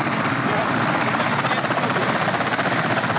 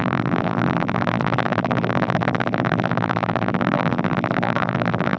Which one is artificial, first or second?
second